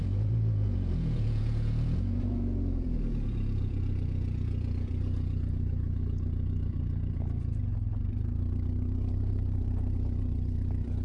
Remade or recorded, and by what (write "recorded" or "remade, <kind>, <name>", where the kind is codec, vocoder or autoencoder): remade, vocoder, Vocos